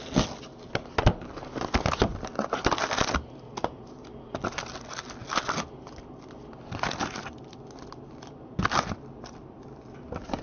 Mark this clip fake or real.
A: real